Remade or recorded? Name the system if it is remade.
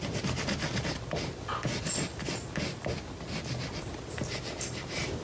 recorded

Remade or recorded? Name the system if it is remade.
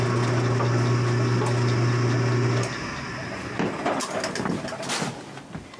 recorded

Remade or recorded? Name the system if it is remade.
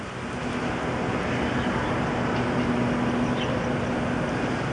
recorded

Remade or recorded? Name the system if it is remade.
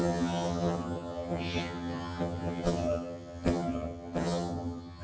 remade, vocoder, HiFi-GAN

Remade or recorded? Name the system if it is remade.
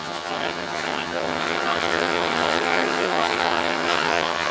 remade, vocoder, HiFi-GAN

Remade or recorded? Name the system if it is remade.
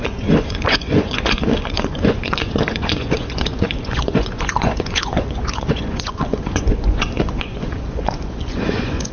remade, vocoder, Vocos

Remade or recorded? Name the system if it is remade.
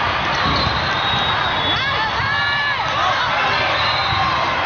recorded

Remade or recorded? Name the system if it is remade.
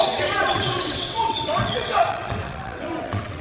remade, vocoder, WaveNeXt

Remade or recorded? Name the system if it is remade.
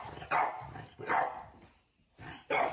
recorded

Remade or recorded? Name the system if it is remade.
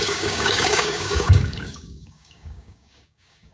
remade, codec, DAC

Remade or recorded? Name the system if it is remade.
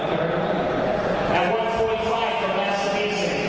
recorded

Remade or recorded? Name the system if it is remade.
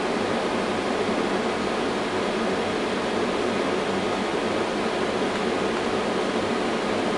recorded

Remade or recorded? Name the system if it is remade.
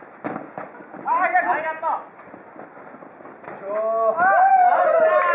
recorded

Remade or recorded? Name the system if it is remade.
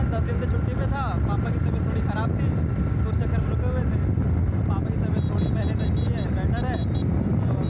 recorded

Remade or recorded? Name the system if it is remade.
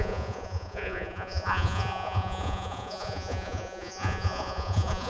remade, vocoder, Vocos